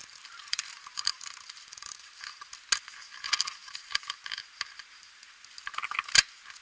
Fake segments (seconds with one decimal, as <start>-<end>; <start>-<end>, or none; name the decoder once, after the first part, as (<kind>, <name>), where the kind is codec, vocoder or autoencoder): 0.0-2.4 (vocoder, BigVGAN v2); 3.6-4.4